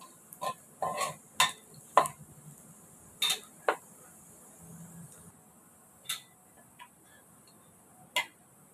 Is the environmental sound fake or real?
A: real